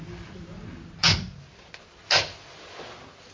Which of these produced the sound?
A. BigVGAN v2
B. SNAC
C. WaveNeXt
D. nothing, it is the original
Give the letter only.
D